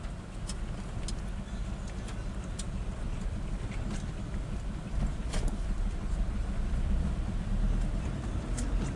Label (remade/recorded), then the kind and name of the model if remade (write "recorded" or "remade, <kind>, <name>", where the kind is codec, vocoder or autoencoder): remade, vocoder, BigVGAN v2